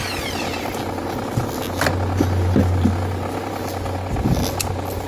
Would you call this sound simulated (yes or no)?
no